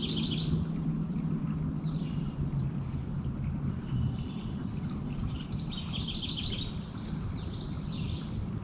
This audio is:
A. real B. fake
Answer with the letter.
A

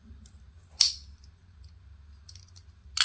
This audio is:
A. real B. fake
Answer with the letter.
A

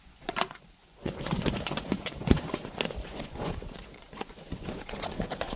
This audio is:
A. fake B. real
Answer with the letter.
A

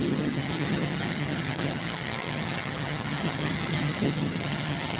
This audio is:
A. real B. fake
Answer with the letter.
B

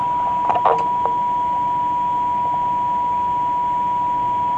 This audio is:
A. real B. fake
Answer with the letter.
A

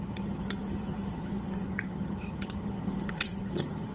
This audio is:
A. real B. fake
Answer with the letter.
B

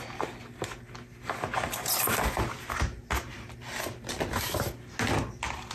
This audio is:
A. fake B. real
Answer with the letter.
B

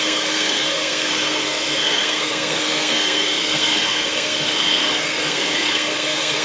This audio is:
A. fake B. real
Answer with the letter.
A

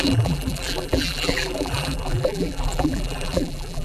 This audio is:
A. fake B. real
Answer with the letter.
A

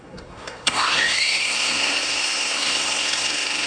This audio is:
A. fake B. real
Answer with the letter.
A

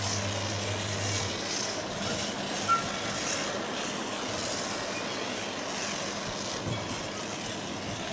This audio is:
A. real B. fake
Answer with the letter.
A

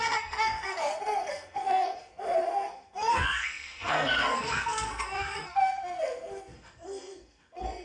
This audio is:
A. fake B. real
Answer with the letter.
A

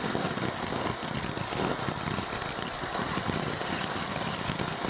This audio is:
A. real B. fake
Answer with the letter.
A